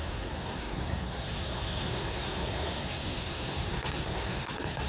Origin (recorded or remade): remade